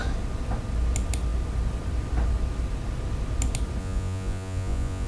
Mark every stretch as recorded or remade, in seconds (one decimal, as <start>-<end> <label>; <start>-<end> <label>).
0.0-3.8 recorded; 3.8-5.1 remade